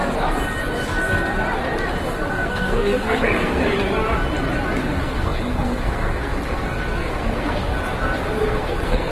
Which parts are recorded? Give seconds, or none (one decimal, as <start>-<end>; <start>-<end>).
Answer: 0.0-2.3; 3.6-4.8; 7.7-8.4